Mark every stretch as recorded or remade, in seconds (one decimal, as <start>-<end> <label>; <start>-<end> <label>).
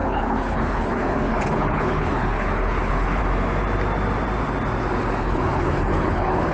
0.0-3.2 remade; 3.2-5.2 recorded; 5.2-6.5 remade